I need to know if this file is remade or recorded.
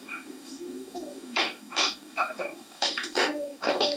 remade